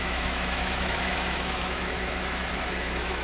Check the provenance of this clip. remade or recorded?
remade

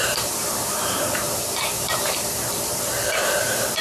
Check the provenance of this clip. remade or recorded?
remade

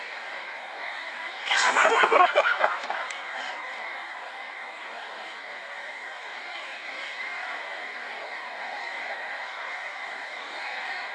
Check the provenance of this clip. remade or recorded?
remade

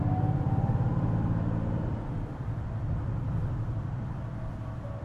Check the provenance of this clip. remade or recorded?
remade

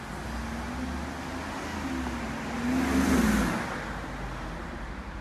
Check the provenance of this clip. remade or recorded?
recorded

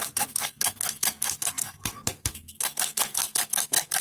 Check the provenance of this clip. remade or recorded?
remade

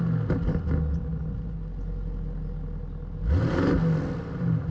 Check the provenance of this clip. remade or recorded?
recorded